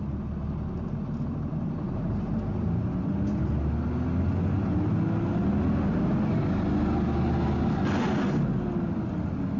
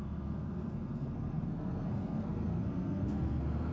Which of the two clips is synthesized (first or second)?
second